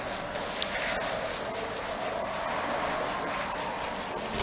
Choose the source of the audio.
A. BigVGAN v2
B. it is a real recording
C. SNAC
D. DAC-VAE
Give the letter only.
B